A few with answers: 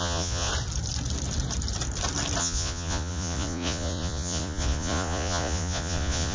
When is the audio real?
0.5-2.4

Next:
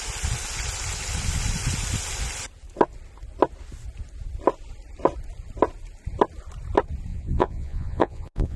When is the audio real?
0.0-7.1

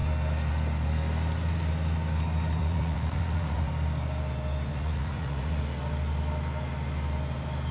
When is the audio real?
0.0-2.6; 3.7-4.7; 5.6-7.7

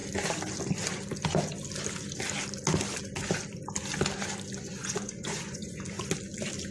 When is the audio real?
0.0-4.8; 5.8-6.7

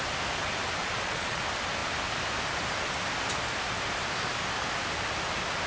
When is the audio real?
0.0-0.8; 1.4-5.7

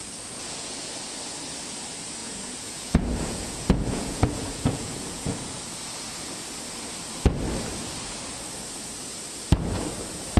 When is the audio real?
0.9-2.2; 5.6-10.4

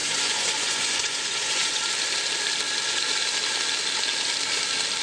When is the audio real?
1.8-5.0

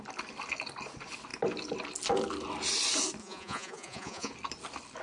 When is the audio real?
0.0-3.2; 4.3-5.0